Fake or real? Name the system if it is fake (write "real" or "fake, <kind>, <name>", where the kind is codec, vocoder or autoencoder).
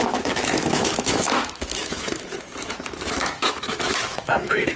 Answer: fake, autoencoder, DAC-VAE